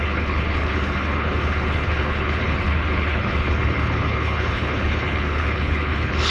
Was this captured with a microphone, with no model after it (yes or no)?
no